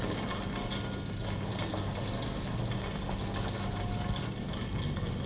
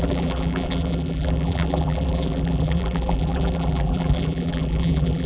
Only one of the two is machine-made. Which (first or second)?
second